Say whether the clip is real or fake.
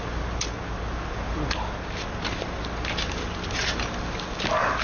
real